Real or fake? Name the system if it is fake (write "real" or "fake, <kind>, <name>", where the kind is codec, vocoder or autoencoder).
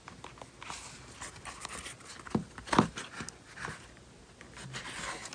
real